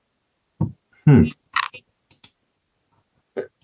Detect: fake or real real